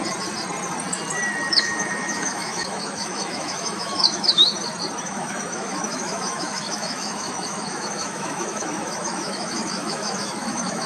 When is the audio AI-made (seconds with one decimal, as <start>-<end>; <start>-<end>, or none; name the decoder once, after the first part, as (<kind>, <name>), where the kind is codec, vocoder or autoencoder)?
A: 1.5-4.5 (autoencoder, DAC-VAE); 5.0-10.9